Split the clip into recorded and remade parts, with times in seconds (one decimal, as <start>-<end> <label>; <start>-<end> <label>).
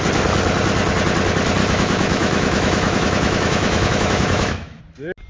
0.0-1.6 recorded; 1.6-4.8 remade; 4.8-5.3 recorded